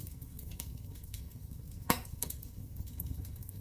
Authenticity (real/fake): fake